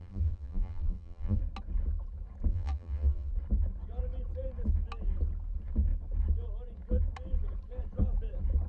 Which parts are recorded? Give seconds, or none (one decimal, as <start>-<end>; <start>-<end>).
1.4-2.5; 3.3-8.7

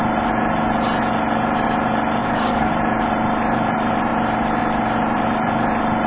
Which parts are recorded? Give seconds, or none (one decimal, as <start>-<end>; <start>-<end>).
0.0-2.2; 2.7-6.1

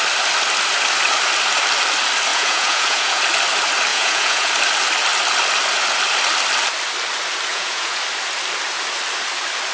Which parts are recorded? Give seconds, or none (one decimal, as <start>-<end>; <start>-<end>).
0.0-2.3; 3.2-3.9; 4.5-7.5; 8.0-9.7

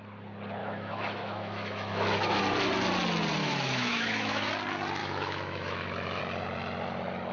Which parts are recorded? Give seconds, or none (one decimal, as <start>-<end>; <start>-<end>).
0.0-0.6; 2.4-3.4; 4.5-5.0; 6.2-7.3